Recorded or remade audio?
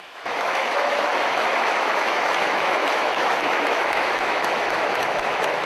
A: remade